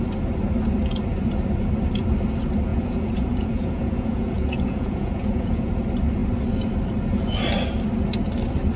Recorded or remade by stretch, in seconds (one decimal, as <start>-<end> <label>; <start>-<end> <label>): 0.0-2.7 recorded; 2.7-5.7 remade; 5.7-8.8 recorded